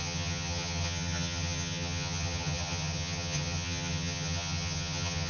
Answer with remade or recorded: remade